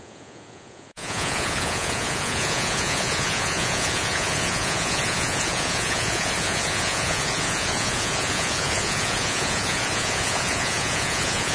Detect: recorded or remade remade